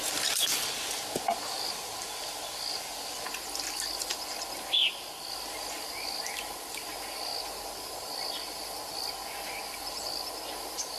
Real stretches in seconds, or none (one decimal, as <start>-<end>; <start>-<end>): 0.0-11.0